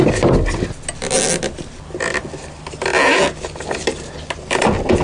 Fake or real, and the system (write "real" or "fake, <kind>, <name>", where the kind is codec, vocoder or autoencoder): real